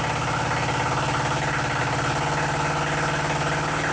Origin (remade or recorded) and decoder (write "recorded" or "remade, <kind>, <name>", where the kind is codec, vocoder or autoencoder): recorded